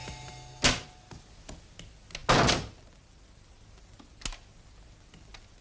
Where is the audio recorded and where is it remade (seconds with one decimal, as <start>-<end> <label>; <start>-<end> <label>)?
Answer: 0.0-5.6 recorded